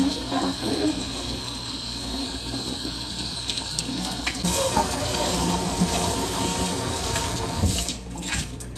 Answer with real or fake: fake